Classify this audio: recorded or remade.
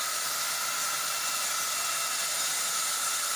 recorded